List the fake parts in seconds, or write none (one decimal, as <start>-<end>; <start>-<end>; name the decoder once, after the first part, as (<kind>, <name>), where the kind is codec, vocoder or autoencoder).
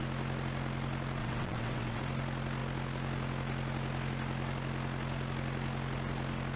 1.2-2.0 (vocoder, WaveNeXt)